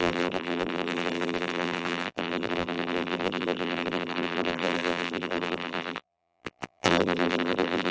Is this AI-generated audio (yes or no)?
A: yes